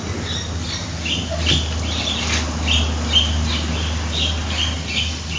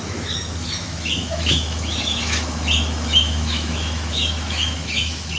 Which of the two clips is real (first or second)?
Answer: first